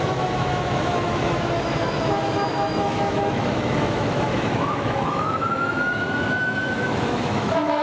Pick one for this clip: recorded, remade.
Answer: remade